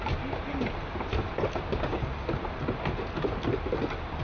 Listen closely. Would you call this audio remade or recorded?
recorded